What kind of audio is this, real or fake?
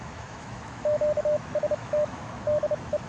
fake